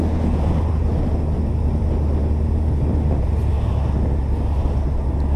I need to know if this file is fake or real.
real